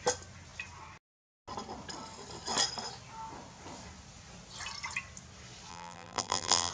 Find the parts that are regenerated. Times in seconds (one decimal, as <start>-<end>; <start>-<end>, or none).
5.7-6.7